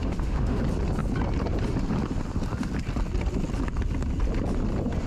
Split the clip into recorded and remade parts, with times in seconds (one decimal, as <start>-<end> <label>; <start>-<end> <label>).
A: 0.0-0.6 remade; 0.6-5.1 recorded